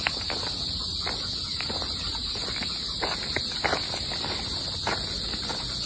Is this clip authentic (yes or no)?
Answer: yes